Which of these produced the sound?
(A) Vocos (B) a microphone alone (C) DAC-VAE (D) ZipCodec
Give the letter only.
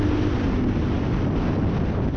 B